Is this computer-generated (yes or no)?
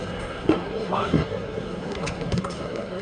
yes